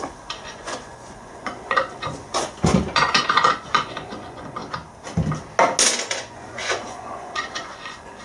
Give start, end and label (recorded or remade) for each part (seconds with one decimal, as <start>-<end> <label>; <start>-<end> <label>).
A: 0.0-4.6 remade; 4.6-6.1 recorded; 6.1-8.2 remade